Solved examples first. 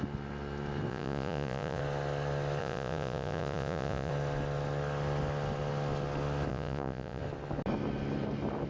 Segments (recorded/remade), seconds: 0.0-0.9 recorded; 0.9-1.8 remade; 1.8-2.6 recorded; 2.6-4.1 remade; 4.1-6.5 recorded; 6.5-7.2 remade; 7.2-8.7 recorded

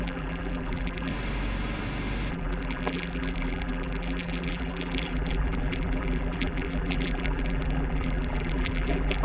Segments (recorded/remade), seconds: 0.0-1.1 remade; 1.1-2.3 recorded; 2.3-9.2 remade

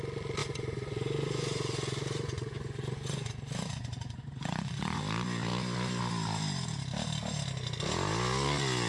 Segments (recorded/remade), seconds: 0.0-0.4 recorded; 0.4-5.0 remade; 5.0-8.9 recorded

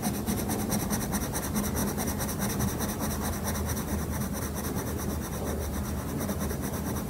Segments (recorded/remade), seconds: 0.0-1.8 recorded; 1.8-2.6 remade; 2.6-3.9 recorded; 3.9-4.4 remade; 4.4-7.1 recorded

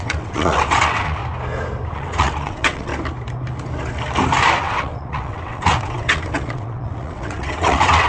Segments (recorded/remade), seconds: 0.0-1.2 remade; 1.2-1.9 recorded; 1.9-2.9 remade; 2.9-4.6 recorded; 4.6-8.1 remade

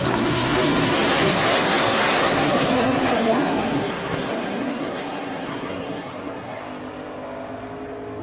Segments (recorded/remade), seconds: 0.0-6.6 remade; 6.6-8.2 recorded

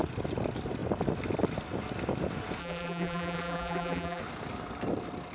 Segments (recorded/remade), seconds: 0.0-2.6 recorded; 2.6-4.2 remade; 4.2-5.3 recorded